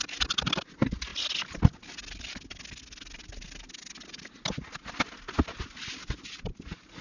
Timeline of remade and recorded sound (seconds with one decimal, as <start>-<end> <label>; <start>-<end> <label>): 0.0-7.0 recorded

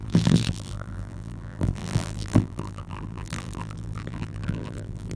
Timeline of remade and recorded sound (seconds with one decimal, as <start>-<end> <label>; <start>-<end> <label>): 0.0-5.2 remade

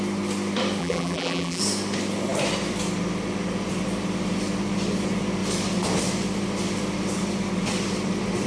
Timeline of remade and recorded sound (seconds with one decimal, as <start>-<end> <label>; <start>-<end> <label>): 0.0-0.8 recorded; 0.8-1.6 remade; 1.6-8.5 recorded

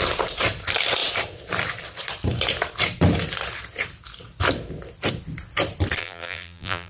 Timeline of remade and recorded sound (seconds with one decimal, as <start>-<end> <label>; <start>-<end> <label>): 0.0-6.0 recorded; 6.0-6.9 remade

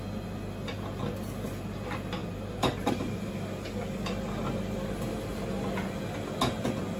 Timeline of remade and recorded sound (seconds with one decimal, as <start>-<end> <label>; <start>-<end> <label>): 0.0-2.2 recorded; 2.2-3.3 remade; 3.3-7.0 recorded